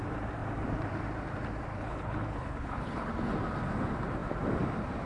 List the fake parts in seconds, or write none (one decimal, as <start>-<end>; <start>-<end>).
1.7-3.1